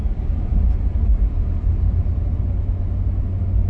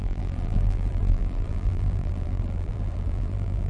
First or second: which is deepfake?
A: second